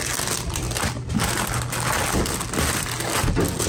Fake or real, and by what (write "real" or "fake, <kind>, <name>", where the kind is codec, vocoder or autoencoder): real